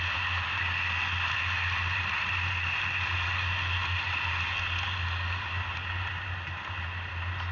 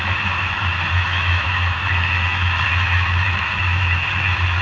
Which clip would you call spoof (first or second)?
second